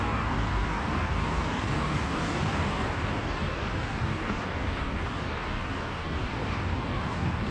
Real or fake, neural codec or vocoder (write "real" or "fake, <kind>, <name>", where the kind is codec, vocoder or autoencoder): fake, codec, DAC